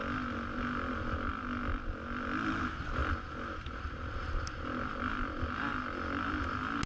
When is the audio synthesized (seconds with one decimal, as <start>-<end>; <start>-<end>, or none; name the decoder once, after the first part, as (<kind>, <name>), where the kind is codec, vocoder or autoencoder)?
none